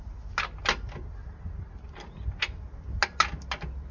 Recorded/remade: recorded